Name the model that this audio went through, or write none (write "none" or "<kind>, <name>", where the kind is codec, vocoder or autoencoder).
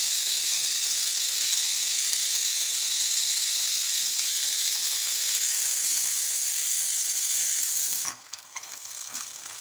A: codec, SNAC